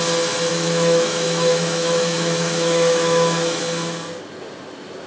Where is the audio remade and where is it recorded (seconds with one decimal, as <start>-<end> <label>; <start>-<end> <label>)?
0.0-0.5 recorded; 0.5-3.6 remade; 3.6-5.1 recorded